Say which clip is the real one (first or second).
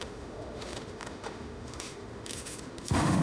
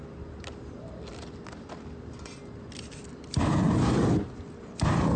second